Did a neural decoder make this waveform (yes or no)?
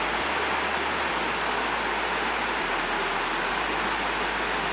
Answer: no